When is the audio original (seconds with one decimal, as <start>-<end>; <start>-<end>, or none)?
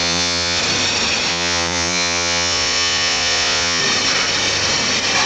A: 0.6-1.3; 3.8-5.3